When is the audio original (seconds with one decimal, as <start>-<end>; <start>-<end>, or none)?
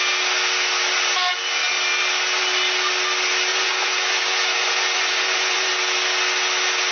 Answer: 0.0-3.5; 5.7-6.9